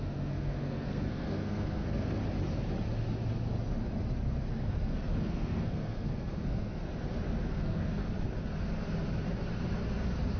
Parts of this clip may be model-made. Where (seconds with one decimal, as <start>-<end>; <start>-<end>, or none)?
0.0-2.2; 4.5-6.9; 7.5-8.0